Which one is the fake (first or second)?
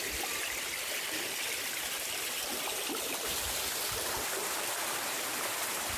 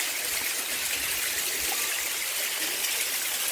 first